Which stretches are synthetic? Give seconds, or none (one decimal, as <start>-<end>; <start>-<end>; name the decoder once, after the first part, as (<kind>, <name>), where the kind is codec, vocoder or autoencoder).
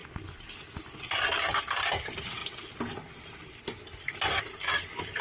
0.8-2.4 (vocoder, BigVGAN v2); 4.4-5.2